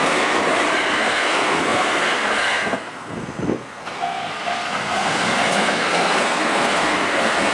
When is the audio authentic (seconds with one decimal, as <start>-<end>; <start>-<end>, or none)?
0.4-0.9